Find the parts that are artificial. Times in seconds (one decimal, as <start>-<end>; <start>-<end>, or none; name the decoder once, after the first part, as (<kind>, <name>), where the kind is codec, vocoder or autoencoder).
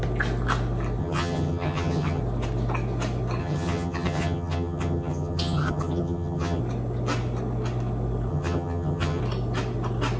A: 1.0-2.2 (vocoder, HiFi-GAN); 3.4-6.6; 8.3-9.2